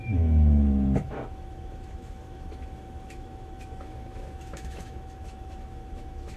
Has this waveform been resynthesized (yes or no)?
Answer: yes